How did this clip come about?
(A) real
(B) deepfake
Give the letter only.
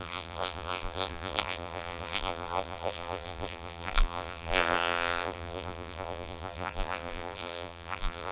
B